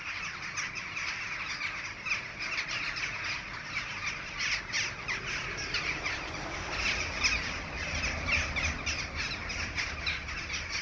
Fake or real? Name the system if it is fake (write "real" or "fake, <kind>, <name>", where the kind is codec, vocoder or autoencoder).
real